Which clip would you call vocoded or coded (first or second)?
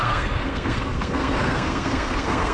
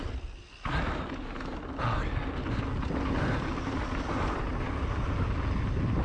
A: first